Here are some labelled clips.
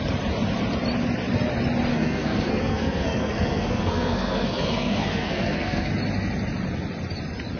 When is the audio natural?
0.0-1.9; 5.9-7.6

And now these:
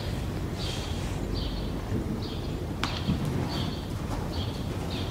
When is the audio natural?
0.0-5.1

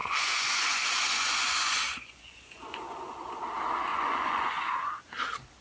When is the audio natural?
3.4-3.9; 5.0-5.6

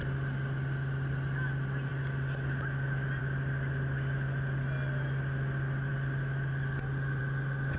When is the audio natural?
0.0-7.8

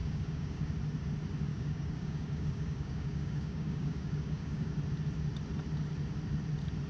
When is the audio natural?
0.7-1.5; 4.7-6.9

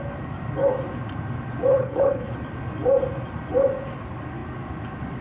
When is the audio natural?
0.0-1.7; 2.3-5.2

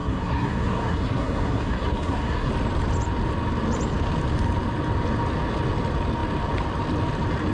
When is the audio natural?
2.5-7.5